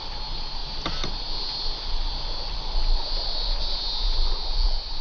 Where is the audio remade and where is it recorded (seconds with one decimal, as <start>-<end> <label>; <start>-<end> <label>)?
0.0-5.0 recorded